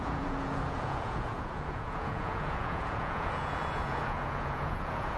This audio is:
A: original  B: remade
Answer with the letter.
B